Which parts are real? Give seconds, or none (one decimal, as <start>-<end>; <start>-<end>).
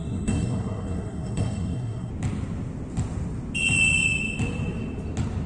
2.1-5.5